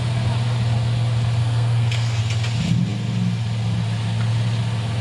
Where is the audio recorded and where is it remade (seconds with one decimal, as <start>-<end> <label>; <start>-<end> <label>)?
0.0-1.4 recorded; 1.4-2.2 remade; 2.2-5.0 recorded